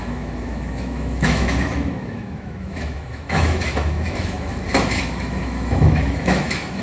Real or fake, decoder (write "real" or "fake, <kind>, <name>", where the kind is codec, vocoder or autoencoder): fake, autoencoder, DAC-VAE